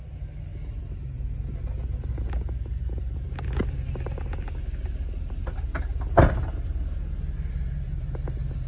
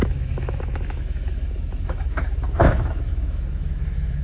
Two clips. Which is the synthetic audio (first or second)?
second